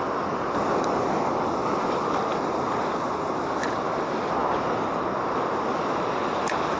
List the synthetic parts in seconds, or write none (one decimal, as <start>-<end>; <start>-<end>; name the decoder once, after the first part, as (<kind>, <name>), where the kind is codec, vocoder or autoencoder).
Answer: 4.4-5.4 (vocoder, BigVGAN v2)